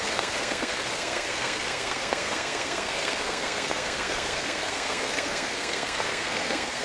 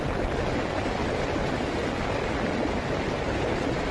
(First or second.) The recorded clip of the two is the second